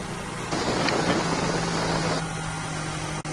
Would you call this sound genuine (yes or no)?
yes